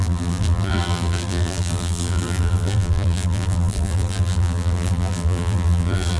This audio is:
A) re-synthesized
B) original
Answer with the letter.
A